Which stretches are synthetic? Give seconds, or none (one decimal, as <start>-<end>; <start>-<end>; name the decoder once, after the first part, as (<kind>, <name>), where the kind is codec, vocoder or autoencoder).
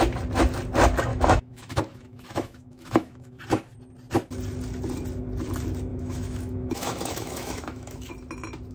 1.1-3.4 (autoencoder, DAC-VAE); 5.9-8.1